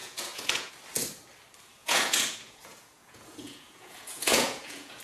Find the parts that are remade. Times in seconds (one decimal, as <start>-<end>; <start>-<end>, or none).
0.0-0.7; 1.8-5.0